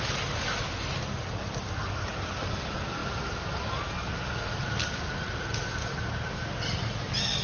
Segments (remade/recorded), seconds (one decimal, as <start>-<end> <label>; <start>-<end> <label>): 0.0-7.4 recorded